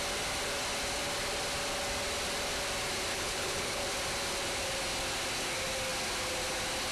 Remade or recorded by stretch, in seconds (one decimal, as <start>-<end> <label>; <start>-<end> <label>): 0.0-3.1 recorded; 3.1-3.8 remade; 3.8-6.9 recorded